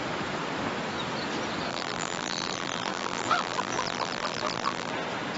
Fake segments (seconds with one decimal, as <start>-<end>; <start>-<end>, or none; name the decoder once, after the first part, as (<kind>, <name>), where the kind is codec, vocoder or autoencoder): 1.7-4.9 (vocoder, BigVGAN v2)